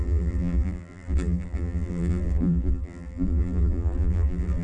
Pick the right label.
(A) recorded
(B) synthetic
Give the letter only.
B